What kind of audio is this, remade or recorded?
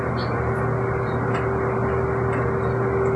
recorded